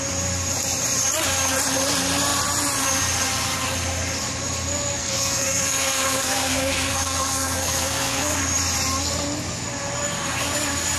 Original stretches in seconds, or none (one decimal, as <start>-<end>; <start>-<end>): 0.0-5.0; 8.4-11.0